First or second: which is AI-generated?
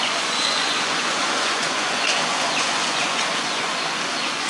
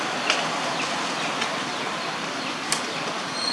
first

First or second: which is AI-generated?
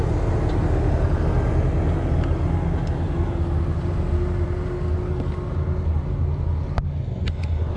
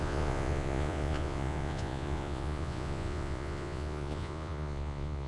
second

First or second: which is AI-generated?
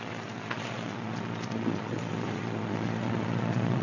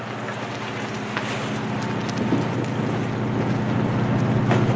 first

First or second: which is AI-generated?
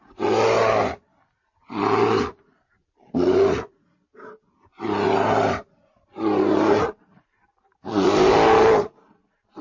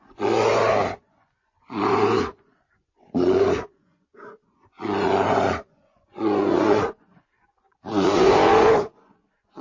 second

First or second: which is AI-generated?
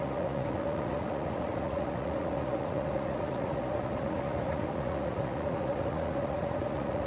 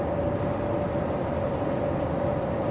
first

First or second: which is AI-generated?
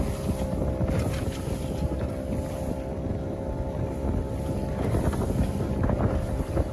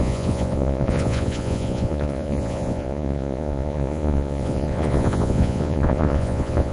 second